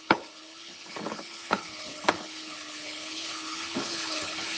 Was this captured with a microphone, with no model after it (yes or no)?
no